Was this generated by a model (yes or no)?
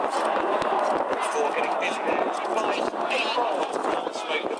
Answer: no